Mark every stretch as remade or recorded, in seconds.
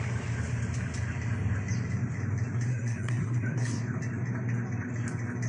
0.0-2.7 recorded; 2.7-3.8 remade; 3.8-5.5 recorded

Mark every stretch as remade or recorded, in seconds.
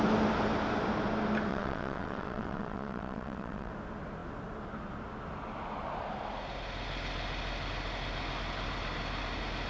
0.0-1.5 recorded; 1.5-3.7 remade; 3.7-9.7 recorded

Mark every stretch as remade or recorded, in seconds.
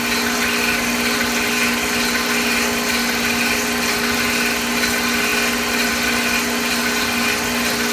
0.0-7.9 recorded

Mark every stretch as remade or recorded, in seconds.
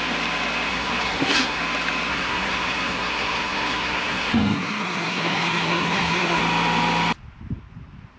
0.0-0.7 recorded; 0.7-1.6 remade; 1.6-2.1 recorded; 2.1-6.4 remade; 6.4-8.2 recorded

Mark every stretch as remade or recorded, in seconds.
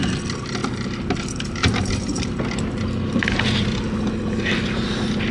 0.0-5.3 recorded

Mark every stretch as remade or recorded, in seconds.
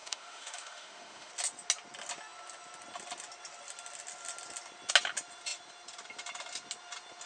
0.0-1.3 remade; 1.3-7.3 recorded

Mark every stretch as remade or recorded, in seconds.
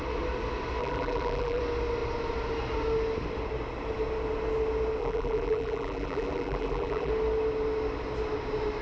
0.0-0.8 recorded; 0.8-1.6 remade; 1.6-5.0 recorded; 5.0-7.1 remade; 7.1-8.8 recorded